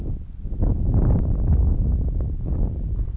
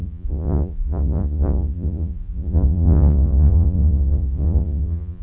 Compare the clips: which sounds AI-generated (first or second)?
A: second